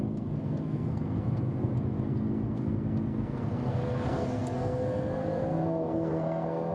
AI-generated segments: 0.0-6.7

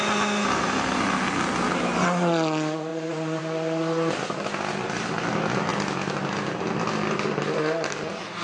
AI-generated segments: none

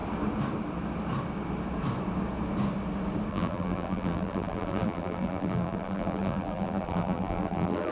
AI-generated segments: 3.3-7.9

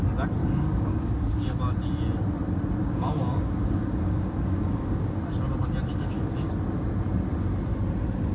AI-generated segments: 0.4-1.6; 2.8-5.2; 5.9-6.5

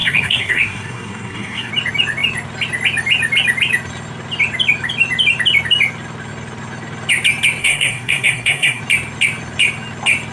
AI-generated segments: 0.0-1.7; 7.6-8.8

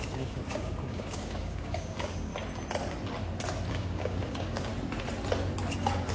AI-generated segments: 0.0-2.3; 3.7-4.7